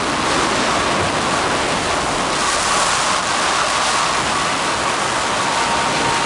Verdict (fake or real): real